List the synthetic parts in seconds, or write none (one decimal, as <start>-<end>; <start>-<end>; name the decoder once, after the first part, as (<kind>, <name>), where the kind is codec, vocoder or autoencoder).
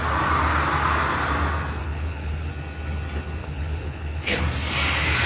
1.8-2.5 (codec, HILCodec); 3.4-4.4